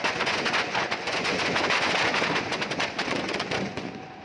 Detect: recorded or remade remade